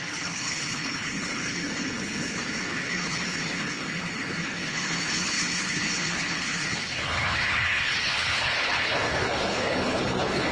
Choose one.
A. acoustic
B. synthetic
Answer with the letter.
B